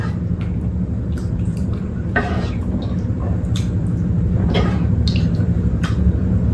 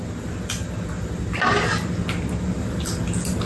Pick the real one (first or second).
second